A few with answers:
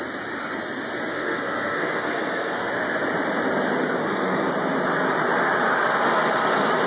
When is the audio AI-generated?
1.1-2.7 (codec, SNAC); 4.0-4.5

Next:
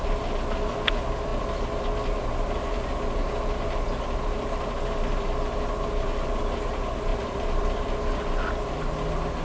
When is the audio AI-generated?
7.1-8.4 (vocoder, BigVGAN v2)

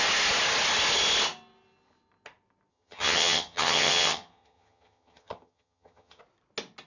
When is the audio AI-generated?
2.7-6.2 (vocoder, HiFi-GAN)